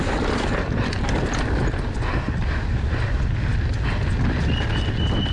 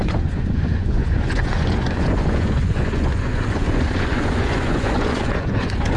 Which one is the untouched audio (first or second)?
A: first